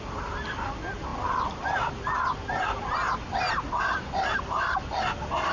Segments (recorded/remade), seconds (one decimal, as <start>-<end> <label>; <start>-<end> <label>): 0.0-5.5 recorded